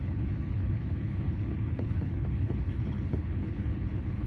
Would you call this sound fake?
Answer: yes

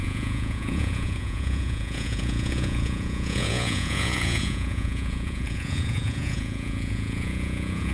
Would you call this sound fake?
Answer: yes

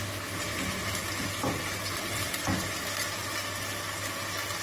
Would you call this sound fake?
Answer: no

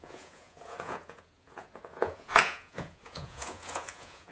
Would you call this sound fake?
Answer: yes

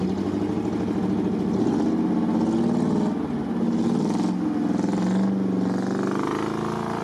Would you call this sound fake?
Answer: no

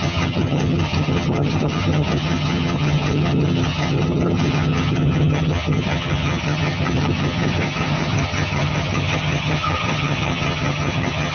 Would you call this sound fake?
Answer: yes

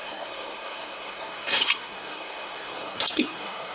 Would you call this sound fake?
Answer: yes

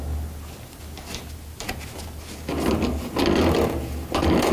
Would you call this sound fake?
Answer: no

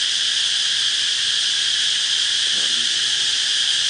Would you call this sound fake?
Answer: no